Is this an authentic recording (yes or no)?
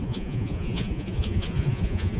no